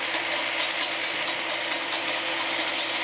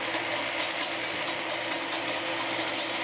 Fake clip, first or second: second